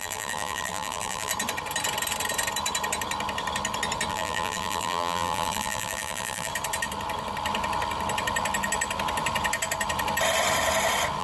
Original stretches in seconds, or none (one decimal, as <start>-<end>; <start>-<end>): 1.3-4.1; 6.5-11.2